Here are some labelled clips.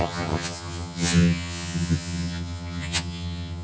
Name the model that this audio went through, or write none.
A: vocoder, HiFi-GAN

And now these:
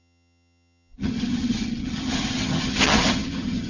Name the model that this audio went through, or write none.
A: vocoder, HiFi-GAN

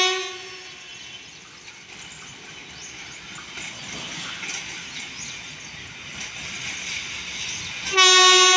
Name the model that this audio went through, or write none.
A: none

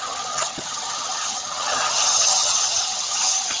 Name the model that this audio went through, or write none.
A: vocoder, HiFi-GAN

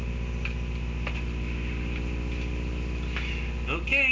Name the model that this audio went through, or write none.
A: none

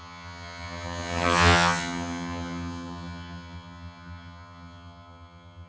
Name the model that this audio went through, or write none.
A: vocoder, HiFi-GAN